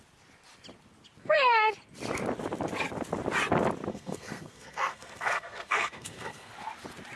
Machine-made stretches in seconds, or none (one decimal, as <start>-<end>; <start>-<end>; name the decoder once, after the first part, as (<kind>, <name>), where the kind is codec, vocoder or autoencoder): 1.2-1.7 (codec, SNAC); 3.9-6.5